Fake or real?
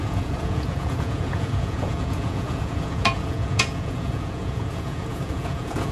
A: fake